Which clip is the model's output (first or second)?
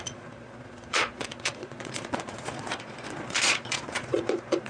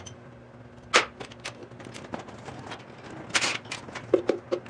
first